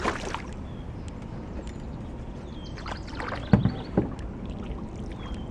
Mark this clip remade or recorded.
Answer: recorded